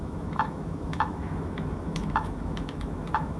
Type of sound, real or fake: fake